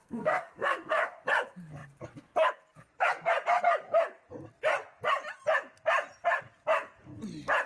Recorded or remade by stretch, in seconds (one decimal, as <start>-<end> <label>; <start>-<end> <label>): 0.0-1.0 remade; 1.0-7.7 recorded